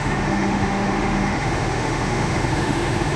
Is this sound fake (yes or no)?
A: yes